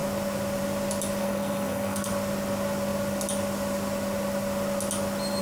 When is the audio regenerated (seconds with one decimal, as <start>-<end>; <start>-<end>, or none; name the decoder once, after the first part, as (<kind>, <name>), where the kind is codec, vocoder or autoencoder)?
1.2-2.1 (codec, SNAC)